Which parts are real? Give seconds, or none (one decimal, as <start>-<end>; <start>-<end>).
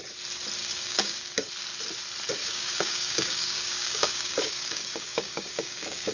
0.0-0.6; 1.5-2.4